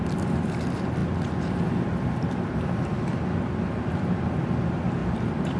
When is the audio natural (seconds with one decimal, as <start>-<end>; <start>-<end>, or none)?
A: 0.0-5.0

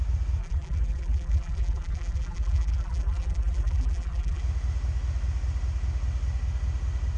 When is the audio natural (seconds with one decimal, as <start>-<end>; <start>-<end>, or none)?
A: 0.0-0.4; 4.4-7.2

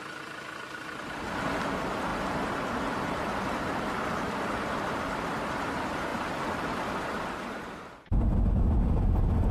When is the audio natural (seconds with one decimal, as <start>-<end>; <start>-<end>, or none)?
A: 2.1-4.8; 6.1-8.7

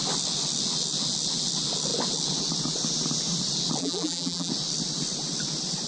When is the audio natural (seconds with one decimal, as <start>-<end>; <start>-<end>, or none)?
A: 0.0-3.8; 4.5-5.9

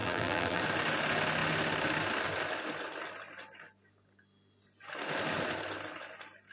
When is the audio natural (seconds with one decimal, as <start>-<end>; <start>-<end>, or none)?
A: 0.6-6.5

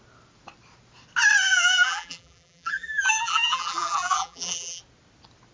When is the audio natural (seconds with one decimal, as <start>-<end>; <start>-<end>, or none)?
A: 0.0-1.5; 4.8-5.5